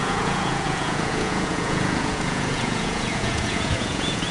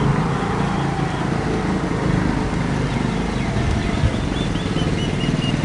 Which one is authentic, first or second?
second